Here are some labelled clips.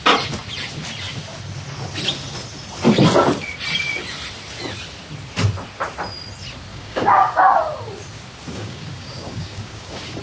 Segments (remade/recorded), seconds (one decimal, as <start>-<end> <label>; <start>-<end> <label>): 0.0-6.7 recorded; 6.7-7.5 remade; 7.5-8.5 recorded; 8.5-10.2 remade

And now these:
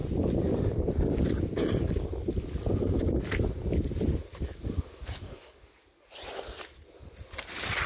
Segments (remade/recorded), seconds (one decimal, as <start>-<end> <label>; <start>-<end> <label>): 0.0-4.3 recorded; 4.3-5.8 remade; 5.8-7.9 recorded

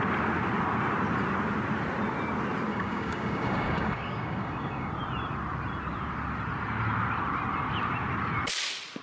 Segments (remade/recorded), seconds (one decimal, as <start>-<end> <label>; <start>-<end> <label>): 0.0-2.7 recorded; 2.7-4.9 remade; 4.9-9.0 recorded

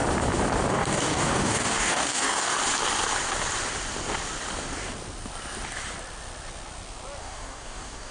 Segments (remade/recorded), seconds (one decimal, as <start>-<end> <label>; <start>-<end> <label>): 0.0-0.7 recorded; 0.7-2.5 remade; 2.5-7.2 recorded; 7.2-8.1 remade